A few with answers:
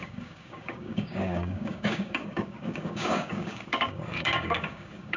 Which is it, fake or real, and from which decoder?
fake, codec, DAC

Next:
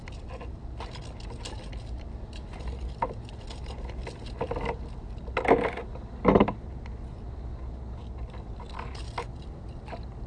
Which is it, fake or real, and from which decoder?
real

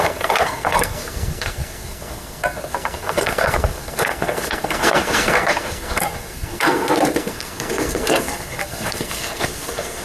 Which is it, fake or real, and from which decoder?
fake, codec, SNAC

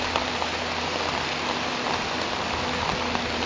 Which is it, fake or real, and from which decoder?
real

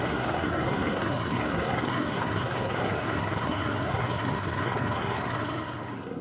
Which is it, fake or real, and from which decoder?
fake, codec, SNAC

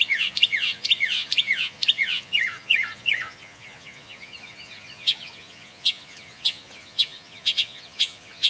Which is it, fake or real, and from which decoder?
fake, vocoder, Vocos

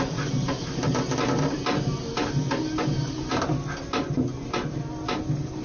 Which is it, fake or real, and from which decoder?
real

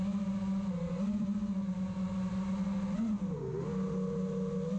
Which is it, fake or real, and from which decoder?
real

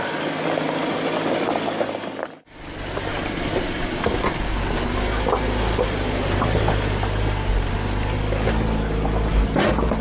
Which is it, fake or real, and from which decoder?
real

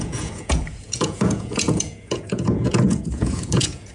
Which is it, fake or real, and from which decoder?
fake, vocoder, Vocos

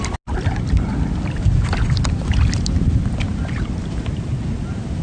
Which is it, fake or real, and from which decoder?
real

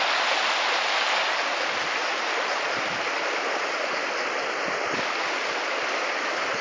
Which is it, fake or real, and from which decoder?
real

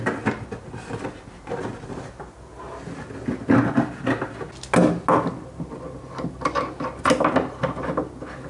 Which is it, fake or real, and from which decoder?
real